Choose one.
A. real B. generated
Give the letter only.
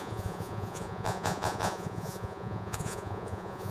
B